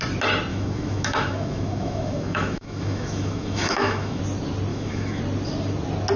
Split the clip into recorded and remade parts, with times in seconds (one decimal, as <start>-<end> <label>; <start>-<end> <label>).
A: 0.0-0.5 recorded; 0.5-4.2 remade; 4.2-4.7 recorded; 4.7-5.2 remade; 5.2-6.2 recorded